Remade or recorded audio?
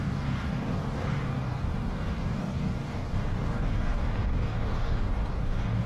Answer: remade